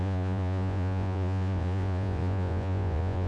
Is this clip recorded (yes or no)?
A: no